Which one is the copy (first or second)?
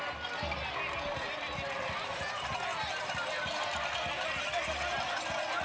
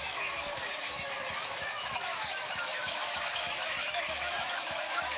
second